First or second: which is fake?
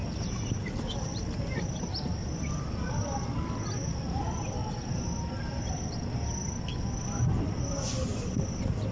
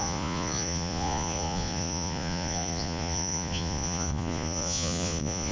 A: second